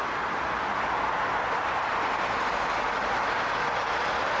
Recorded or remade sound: recorded